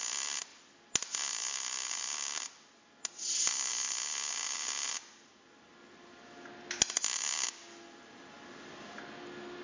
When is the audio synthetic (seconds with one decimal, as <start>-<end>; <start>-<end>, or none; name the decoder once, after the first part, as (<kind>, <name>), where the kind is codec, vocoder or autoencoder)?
none